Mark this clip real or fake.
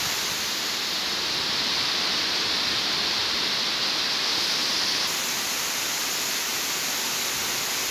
real